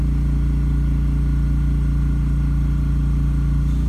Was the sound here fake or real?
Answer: real